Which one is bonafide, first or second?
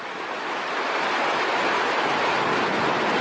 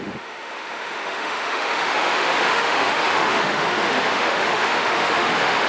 first